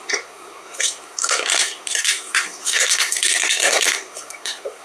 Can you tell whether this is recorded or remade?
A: remade